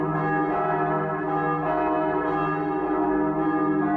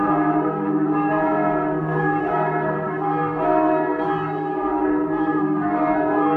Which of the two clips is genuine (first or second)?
first